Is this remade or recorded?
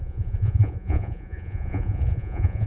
remade